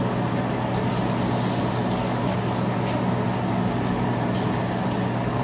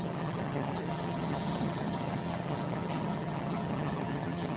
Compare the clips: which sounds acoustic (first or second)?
first